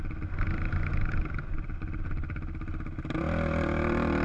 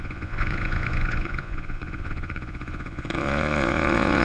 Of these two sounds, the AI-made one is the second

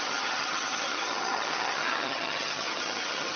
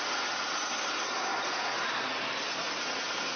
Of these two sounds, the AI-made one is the first